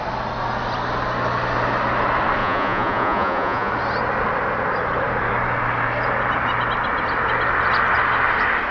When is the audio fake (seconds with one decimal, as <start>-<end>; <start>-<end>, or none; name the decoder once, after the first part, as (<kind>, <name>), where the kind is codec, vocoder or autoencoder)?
2.4-3.7 (vocoder, Vocos)